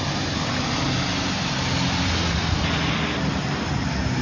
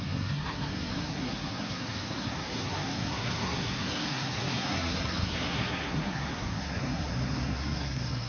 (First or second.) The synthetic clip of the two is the second